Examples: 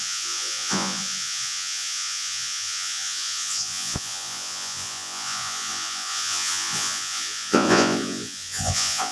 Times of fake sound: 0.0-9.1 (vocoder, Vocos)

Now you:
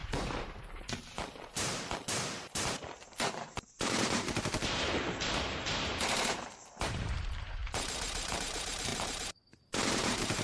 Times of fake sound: 0.0-10.4 (vocoder, BigVGAN v2)

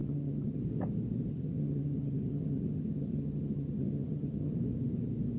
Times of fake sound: 0.0-0.6 (vocoder, HiFi-GAN); 1.3-4.5

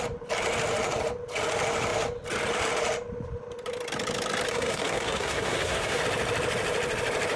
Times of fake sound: 4.5-6.0 (codec, SNAC)

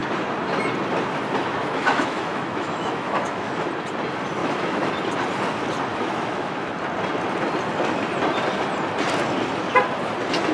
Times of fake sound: 1.6-3.5 (autoencoder, DAC-VAE); 4.4-4.9; 5.9-6.7

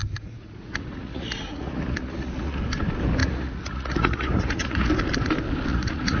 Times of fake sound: 0.0-2.6 (vocoder, Vocos); 3.2-4.9; 5.7-6.2

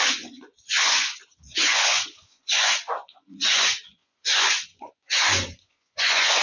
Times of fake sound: 0.0-6.4 (vocoder, Vocos)